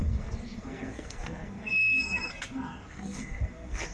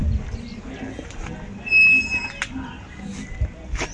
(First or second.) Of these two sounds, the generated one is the first